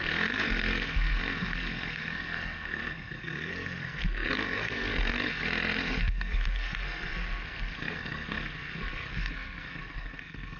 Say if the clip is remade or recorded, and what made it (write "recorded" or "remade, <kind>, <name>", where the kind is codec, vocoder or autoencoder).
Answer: remade, codec, SNAC